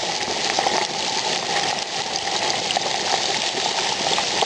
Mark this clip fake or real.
real